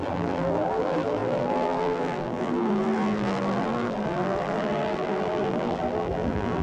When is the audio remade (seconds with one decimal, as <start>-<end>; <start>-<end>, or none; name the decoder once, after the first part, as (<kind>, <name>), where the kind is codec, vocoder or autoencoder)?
0.0-6.6 (vocoder, BigVGAN v2)